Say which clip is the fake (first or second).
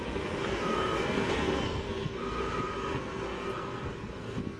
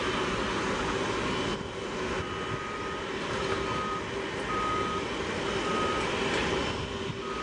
first